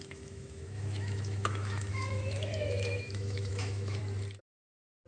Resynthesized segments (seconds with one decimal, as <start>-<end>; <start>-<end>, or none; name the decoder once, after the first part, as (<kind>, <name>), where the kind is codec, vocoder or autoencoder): 0.0-4.0 (autoencoder, DAC-VAE)

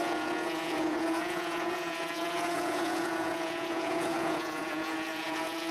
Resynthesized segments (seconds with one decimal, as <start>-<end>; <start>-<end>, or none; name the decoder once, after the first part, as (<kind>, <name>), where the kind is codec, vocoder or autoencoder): 0.0-5.7 (vocoder, Vocos)

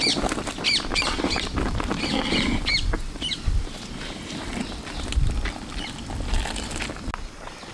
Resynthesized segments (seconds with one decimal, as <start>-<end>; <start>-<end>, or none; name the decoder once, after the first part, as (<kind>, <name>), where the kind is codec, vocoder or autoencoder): none

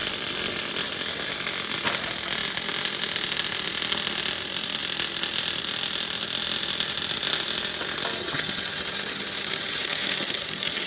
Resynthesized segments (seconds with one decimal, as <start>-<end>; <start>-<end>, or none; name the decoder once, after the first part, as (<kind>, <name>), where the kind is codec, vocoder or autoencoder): 8.2-10.9 (vocoder, HiFi-GAN)

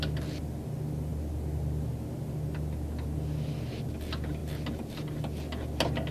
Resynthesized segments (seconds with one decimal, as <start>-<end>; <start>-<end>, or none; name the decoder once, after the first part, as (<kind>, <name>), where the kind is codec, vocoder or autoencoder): none

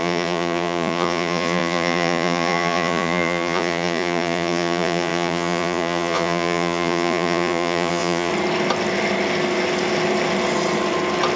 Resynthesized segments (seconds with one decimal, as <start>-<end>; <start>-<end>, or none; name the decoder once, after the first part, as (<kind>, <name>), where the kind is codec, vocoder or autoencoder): 0.0-8.3 (vocoder, Vocos)

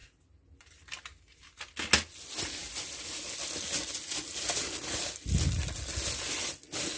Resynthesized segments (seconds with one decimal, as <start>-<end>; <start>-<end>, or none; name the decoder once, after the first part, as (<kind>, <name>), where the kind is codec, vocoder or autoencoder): none

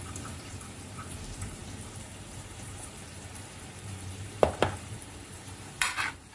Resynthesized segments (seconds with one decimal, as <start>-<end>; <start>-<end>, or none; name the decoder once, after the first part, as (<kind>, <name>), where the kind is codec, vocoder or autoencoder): 0.0-6.3 (vocoder, BigVGAN v2)